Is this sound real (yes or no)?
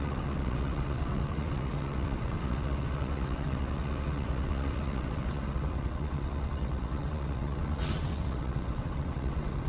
no